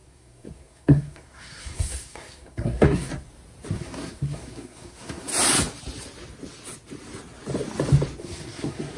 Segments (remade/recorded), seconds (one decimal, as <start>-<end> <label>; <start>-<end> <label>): 0.0-3.1 remade; 3.1-3.7 recorded; 3.7-5.3 remade; 5.3-8.2 recorded; 8.2-9.0 remade